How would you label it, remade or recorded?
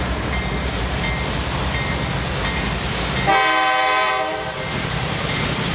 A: recorded